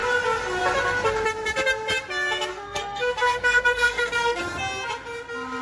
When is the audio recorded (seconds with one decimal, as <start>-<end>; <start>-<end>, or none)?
0.0-2.5; 4.4-5.6